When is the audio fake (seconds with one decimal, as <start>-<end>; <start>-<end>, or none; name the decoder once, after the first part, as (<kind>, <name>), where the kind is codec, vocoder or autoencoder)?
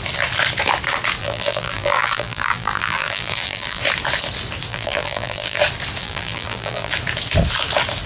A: 1.2-3.8 (vocoder, BigVGAN v2); 4.7-5.6; 6.0-6.9